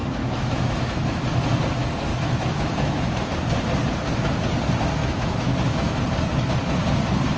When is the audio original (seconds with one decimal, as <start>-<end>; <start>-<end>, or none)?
1.2-2.1; 3.3-5.0; 6.0-7.4